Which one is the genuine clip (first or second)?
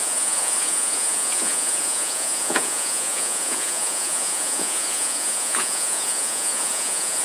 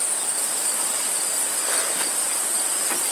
second